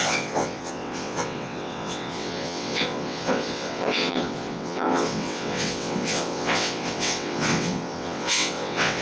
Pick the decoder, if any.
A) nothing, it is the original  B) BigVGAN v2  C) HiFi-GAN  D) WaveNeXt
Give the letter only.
D